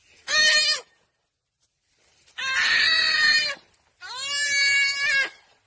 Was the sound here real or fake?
real